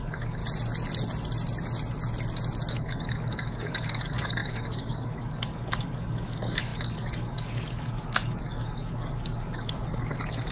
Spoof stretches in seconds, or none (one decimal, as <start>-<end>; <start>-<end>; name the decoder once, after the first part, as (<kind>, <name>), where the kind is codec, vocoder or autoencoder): 0.0-0.4 (codec, DAC); 2.7-10.5